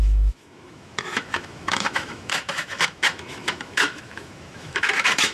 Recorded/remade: remade